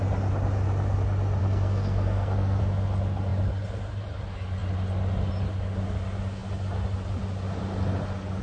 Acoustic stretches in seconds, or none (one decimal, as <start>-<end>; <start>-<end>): 0.0-1.4; 2.6-8.4